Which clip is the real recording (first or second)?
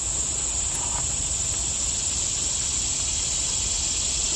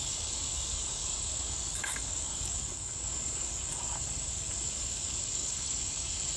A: first